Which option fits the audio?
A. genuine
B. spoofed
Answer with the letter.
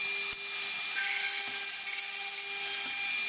A